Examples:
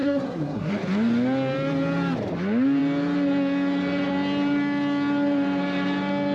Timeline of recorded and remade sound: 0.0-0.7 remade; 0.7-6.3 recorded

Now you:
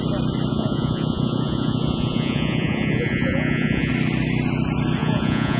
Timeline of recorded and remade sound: 0.0-0.5 recorded; 0.5-3.9 remade; 3.9-5.0 recorded; 5.0-5.6 remade

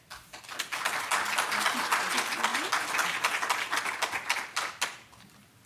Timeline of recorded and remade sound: 0.0-5.7 recorded